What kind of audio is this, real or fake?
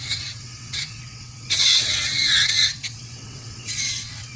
fake